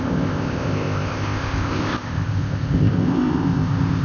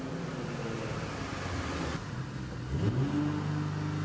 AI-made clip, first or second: first